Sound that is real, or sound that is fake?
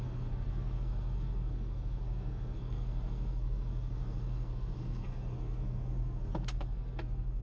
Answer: fake